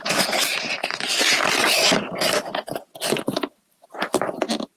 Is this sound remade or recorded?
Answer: recorded